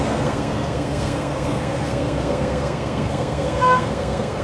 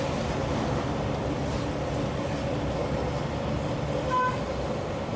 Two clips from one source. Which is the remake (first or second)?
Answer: first